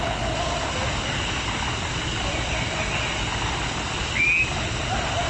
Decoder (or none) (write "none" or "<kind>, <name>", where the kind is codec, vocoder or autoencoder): none